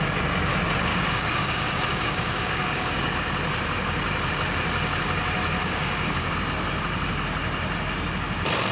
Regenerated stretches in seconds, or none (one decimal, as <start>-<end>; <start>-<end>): 0.9-3.1; 5.6-6.3

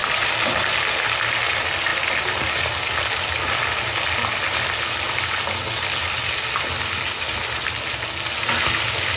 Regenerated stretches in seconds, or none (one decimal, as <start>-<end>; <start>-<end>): none

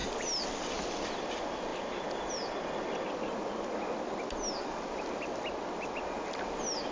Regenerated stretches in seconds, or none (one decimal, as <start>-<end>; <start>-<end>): none